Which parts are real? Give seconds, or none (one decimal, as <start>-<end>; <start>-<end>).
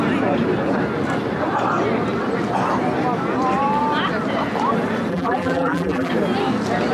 0.0-5.1; 6.1-6.9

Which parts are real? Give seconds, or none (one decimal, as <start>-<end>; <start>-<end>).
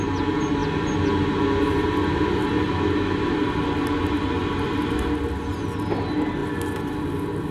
0.0-7.5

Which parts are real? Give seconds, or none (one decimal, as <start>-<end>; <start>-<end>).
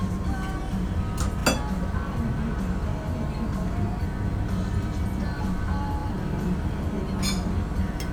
0.0-4.3; 5.4-6.0; 6.8-8.1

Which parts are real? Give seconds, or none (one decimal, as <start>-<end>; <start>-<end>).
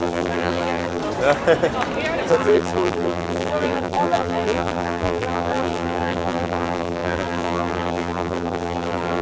1.0-2.3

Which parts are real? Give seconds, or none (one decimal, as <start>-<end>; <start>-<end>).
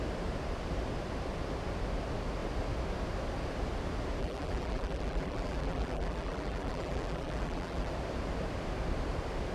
0.0-4.2; 7.9-9.5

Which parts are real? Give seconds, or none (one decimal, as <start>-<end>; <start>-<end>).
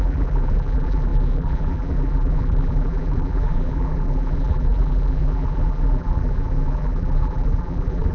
none